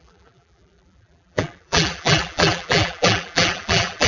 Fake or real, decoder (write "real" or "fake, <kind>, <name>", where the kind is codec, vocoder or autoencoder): fake, vocoder, BigVGAN v2